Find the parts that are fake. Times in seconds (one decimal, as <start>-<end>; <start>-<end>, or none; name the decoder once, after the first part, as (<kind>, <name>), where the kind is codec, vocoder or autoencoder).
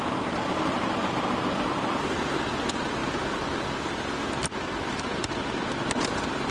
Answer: 0.0-6.5 (vocoder, BigVGAN v2)